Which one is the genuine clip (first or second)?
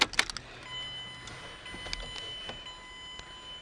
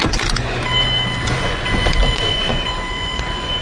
first